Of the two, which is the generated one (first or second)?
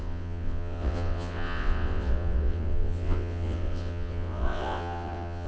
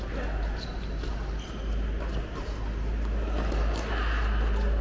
first